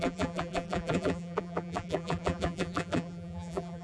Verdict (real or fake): fake